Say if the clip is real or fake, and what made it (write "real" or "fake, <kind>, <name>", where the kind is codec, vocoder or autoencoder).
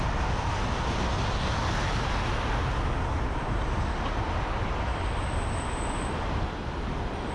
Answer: real